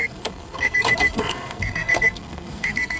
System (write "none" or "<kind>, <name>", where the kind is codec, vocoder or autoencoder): codec, SNAC